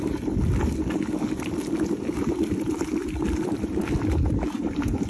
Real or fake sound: real